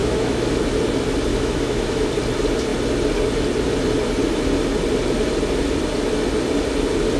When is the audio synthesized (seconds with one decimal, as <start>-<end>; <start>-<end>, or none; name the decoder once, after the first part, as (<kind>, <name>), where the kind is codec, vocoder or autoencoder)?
0.0-0.5 (autoencoder, DAC-VAE); 1.3-2.1